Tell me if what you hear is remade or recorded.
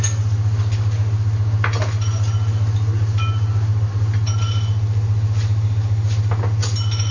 recorded